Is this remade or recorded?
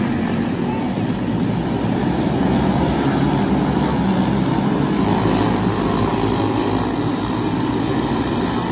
recorded